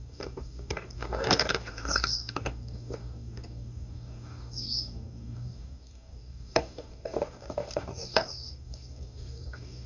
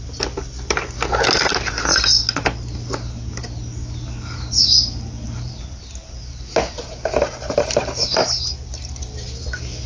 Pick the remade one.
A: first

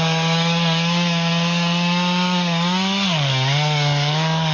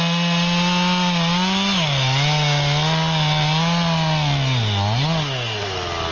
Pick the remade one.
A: first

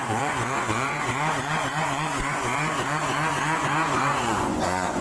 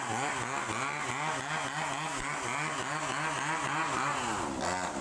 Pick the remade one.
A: first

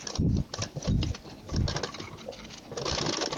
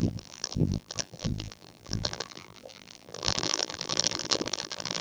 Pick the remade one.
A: second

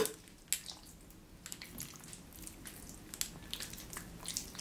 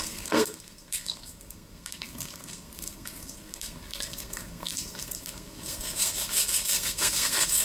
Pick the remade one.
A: second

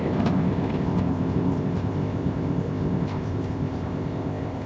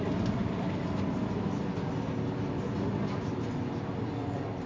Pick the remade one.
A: first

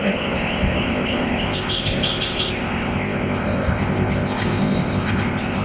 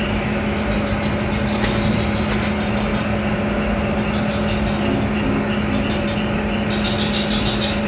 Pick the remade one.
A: first